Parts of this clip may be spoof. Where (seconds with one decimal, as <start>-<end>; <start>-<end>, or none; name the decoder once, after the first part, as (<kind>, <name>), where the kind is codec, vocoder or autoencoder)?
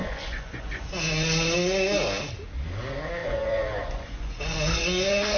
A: 0.0-0.9 (vocoder, Vocos); 3.2-5.4